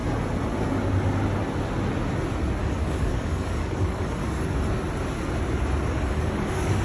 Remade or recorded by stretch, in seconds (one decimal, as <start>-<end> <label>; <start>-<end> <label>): 0.0-2.6 recorded; 2.6-4.2 remade; 4.2-5.9 recorded; 5.9-6.8 remade